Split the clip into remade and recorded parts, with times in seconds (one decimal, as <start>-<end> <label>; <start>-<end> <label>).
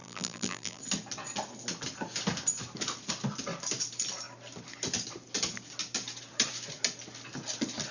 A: 0.0-0.8 remade; 0.8-7.9 recorded